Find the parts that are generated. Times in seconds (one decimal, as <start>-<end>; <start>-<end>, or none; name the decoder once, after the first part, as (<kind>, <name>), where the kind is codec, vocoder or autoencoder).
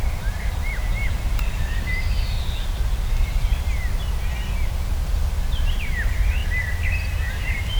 0.0-2.8 (vocoder, BigVGAN v2); 5.8-6.4; 7.3-7.8